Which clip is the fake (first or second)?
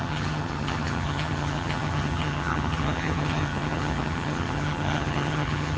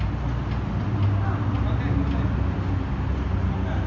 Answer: first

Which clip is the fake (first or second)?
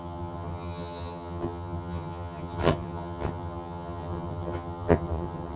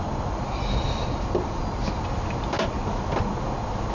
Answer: first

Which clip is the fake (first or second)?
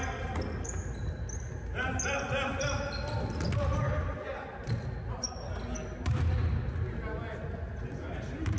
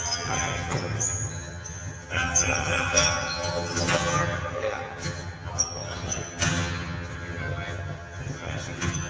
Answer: second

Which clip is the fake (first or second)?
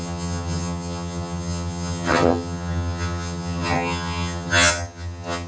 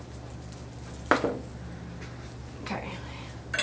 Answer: first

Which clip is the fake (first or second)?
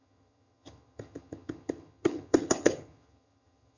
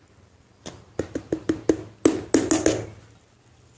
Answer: first